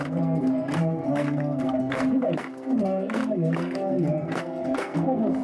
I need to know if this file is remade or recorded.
remade